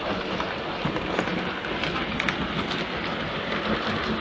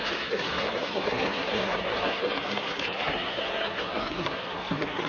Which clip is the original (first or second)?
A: first